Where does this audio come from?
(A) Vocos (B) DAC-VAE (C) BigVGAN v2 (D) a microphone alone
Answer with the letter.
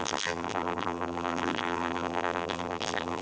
C